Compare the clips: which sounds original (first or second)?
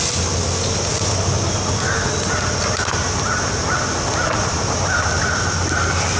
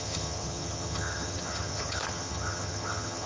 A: first